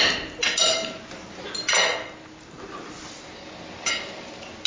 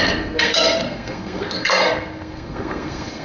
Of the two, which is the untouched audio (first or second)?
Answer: first